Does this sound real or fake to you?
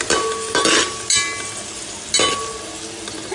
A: real